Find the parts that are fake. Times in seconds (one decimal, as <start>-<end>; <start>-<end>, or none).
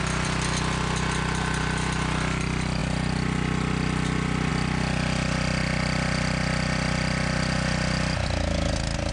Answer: none